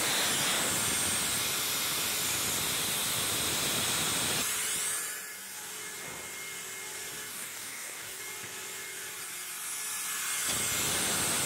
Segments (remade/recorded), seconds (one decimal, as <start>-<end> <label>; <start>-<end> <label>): 0.0-7.3 recorded; 7.3-8.2 remade; 8.2-11.5 recorded